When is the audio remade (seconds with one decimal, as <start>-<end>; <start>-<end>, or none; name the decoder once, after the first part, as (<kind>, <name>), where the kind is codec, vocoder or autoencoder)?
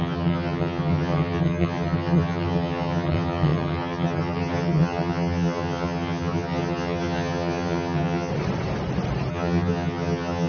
0.0-8.3 (vocoder, HiFi-GAN); 9.3-10.5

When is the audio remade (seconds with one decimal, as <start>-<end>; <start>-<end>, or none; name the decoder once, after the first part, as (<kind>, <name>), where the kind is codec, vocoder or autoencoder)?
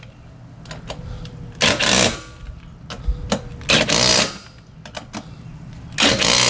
none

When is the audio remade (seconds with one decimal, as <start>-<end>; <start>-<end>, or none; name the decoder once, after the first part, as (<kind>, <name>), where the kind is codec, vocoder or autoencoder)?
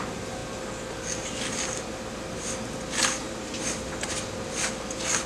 none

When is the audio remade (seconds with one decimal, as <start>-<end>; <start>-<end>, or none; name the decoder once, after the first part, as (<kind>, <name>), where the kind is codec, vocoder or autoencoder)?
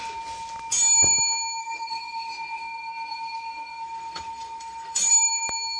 1.6-5.1 (codec, SNAC)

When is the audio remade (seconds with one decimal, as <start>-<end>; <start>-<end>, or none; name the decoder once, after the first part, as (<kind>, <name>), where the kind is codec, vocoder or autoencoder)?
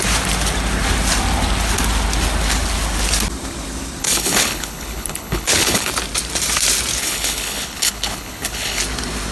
4.0-5.9 (codec, HILCodec); 7.0-8.8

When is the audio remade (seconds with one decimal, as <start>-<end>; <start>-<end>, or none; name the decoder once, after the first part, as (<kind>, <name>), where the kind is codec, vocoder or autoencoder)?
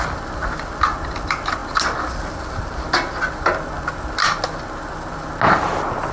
none